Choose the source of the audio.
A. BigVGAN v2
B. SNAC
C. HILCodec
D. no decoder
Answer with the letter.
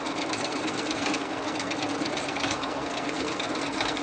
B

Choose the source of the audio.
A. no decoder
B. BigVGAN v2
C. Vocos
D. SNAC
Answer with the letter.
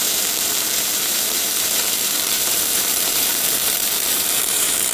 B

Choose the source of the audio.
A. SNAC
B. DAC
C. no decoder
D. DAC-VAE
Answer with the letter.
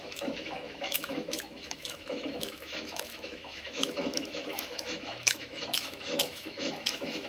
D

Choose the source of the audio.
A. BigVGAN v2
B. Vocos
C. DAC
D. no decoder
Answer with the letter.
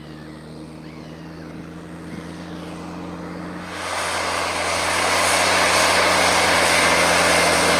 D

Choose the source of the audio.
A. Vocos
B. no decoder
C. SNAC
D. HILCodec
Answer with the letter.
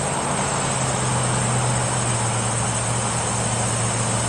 B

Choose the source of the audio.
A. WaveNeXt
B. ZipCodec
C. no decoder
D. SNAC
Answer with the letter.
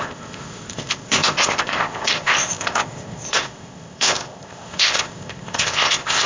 B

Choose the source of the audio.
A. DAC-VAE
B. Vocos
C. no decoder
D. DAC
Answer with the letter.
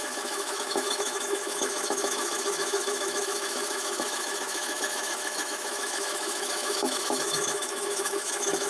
A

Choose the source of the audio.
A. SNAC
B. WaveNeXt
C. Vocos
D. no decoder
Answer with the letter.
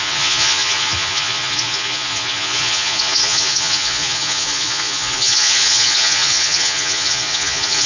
C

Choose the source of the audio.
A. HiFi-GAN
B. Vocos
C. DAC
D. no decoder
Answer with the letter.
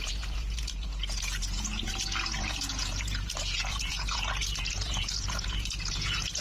B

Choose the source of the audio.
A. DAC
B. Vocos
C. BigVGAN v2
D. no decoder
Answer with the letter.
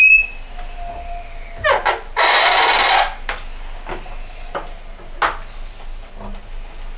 D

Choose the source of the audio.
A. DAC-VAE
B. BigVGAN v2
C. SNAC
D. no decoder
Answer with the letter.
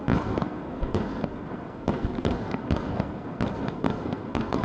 C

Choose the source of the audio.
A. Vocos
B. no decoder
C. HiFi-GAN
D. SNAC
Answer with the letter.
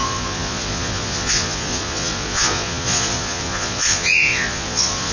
A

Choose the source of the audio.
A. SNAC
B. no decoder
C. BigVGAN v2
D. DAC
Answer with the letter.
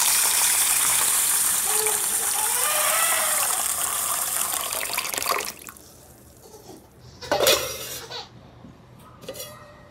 C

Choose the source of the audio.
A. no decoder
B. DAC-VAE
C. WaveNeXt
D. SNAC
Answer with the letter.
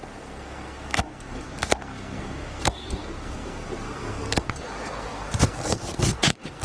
D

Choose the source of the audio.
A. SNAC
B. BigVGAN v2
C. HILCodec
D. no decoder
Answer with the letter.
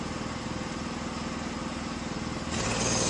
D